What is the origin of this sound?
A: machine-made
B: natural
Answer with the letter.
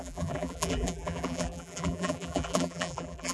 A